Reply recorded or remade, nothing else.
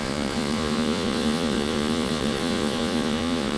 remade